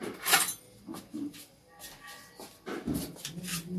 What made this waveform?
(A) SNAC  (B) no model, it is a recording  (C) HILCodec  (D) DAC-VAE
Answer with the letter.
B